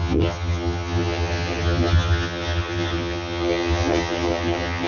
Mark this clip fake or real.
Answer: fake